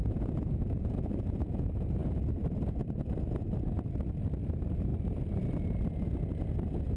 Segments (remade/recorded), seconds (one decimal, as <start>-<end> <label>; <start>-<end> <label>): 0.0-1.6 remade; 1.6-7.0 recorded